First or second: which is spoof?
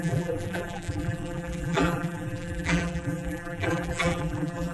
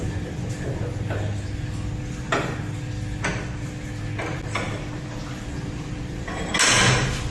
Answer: first